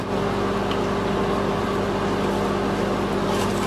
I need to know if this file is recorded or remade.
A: recorded